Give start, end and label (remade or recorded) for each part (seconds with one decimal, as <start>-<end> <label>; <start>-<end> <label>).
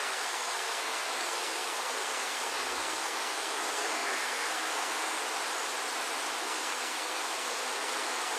0.0-5.2 remade; 5.2-6.4 recorded; 6.4-8.4 remade